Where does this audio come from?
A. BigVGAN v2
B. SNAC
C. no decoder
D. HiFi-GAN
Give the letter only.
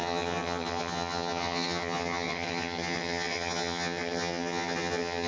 D